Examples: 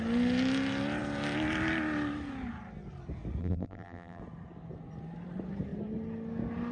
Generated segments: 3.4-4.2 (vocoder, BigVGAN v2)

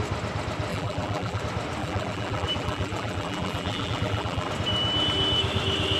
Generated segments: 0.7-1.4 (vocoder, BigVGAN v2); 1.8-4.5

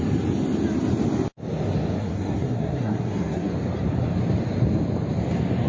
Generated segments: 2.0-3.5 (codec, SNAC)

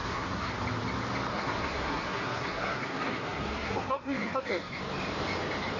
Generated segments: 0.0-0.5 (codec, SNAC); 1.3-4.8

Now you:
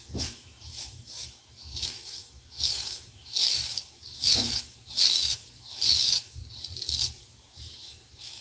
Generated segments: 0.0-6.4 (autoencoder, DAC-VAE); 7.2-8.4

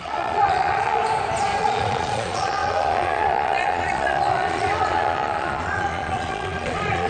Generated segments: 0.0-1.0 (vocoder, Vocos); 1.6-7.1

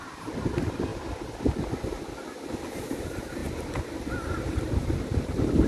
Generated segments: 0.0-0.9 (vocoder, BigVGAN v2); 2.7-5.7